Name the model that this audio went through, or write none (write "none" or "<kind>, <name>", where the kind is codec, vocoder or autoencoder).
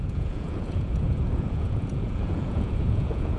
vocoder, Vocos